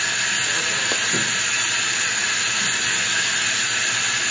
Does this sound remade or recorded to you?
recorded